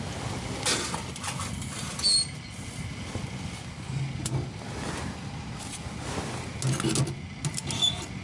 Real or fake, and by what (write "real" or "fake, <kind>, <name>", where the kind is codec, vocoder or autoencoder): real